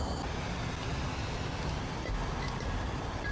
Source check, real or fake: real